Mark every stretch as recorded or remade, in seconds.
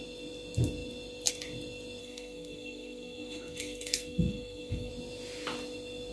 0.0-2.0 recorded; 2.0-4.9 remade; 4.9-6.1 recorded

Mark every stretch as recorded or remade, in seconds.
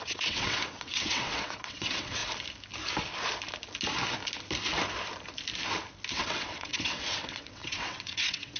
0.0-2.2 remade; 2.2-6.1 recorded; 6.1-8.6 remade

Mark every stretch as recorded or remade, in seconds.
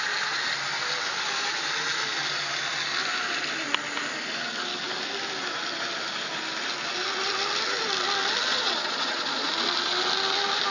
0.0-8.5 recorded; 8.5-9.5 remade; 9.5-10.7 recorded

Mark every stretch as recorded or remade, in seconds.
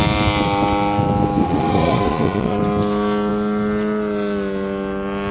0.0-1.4 recorded; 1.4-2.6 remade; 2.6-5.3 recorded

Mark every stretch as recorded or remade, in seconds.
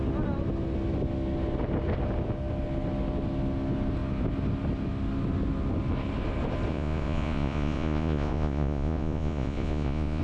0.0-6.7 recorded; 6.7-10.2 remade